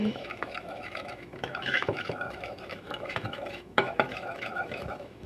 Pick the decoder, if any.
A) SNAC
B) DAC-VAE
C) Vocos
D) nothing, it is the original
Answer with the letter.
B